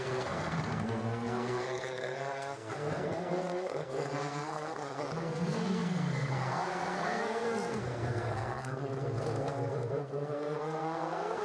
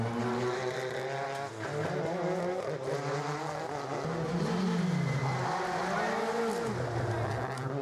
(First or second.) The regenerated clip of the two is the first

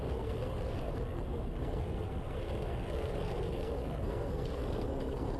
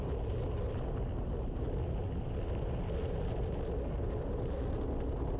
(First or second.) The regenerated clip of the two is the first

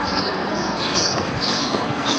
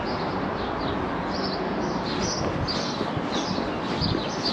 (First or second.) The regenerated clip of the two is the first